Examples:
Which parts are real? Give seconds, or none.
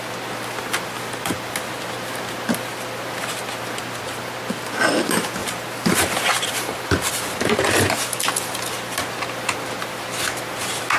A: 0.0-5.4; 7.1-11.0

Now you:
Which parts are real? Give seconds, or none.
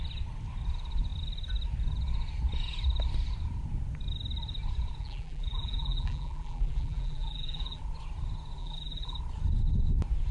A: 0.0-5.0; 7.8-8.6; 9.2-10.3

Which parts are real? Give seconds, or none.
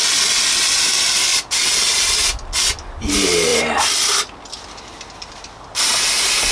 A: 0.0-1.3; 1.9-6.5